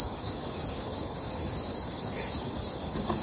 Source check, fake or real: fake